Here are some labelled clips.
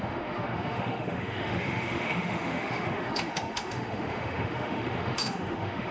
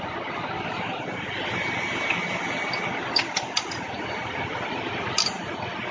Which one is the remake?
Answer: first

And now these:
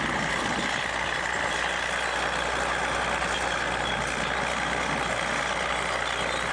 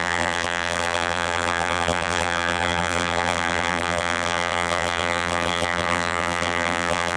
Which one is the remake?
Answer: second